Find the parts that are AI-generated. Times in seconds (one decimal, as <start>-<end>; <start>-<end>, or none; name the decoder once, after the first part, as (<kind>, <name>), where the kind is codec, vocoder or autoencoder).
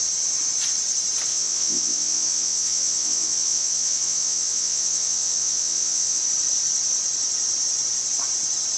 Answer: 1.3-6.2 (vocoder, Vocos)